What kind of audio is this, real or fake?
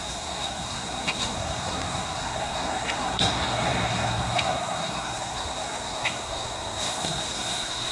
fake